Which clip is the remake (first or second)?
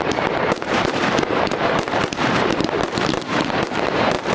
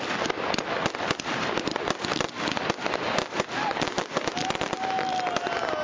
first